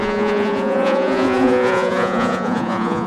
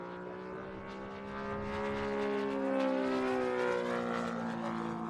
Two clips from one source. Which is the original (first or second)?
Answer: second